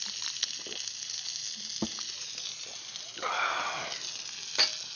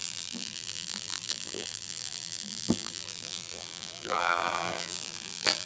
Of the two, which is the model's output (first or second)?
second